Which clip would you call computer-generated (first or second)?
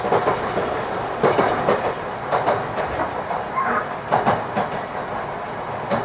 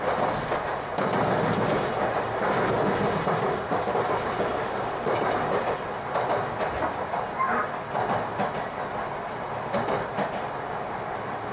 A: first